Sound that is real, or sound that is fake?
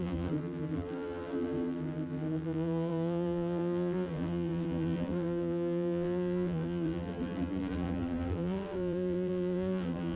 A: fake